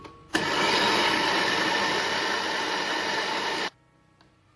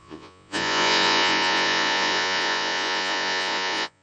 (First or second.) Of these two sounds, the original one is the first